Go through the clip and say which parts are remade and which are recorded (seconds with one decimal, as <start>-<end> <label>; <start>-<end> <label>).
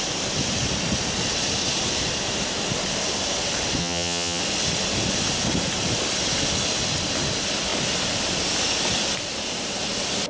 0.0-3.8 recorded; 3.8-4.4 remade; 4.4-10.3 recorded